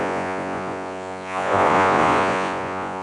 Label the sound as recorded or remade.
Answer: remade